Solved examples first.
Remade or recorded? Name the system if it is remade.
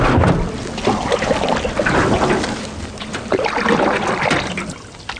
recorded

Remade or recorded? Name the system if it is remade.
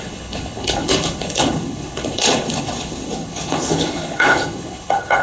remade, codec, HILCodec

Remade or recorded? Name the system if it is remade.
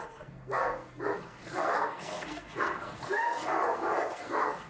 remade, codec, SNAC